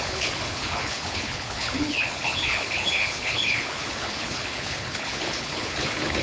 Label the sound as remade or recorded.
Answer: remade